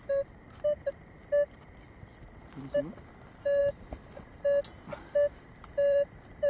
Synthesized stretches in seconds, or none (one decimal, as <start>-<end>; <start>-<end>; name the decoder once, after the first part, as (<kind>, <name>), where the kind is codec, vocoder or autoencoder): none